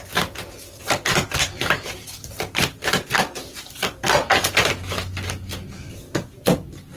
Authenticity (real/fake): real